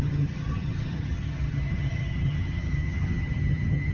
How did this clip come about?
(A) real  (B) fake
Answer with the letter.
B